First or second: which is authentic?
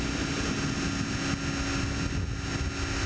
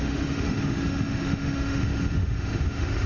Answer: first